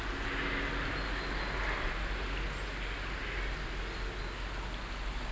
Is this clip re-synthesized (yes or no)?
no